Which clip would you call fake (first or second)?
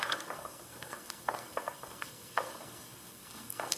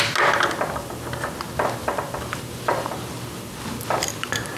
first